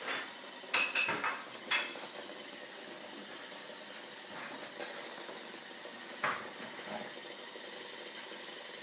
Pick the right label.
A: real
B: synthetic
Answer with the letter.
A